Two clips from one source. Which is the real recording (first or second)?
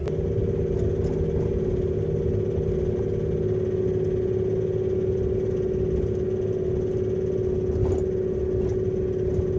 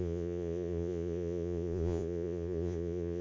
first